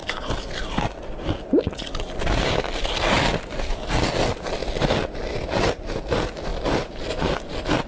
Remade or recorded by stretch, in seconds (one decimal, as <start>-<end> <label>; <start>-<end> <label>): 0.0-7.9 recorded